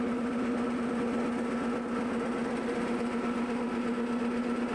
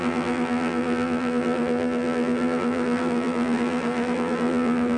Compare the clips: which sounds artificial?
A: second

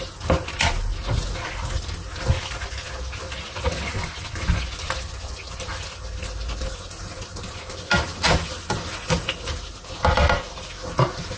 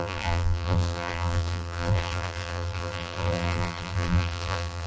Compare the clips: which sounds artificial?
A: second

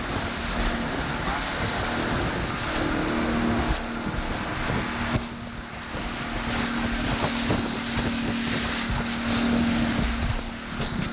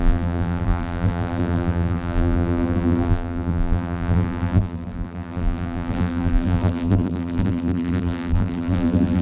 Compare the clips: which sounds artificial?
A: second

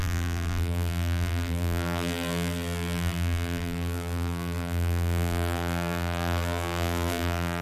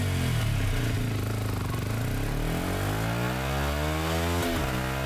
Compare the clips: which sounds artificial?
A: first